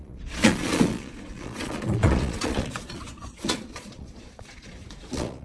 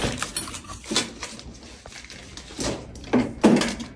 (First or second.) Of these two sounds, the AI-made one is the first